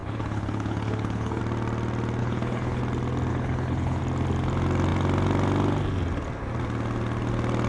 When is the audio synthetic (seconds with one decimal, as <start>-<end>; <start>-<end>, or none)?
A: 0.0-1.4; 2.2-2.8; 3.3-4.0